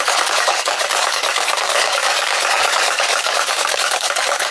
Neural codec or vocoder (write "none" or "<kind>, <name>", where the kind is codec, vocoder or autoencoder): codec, DAC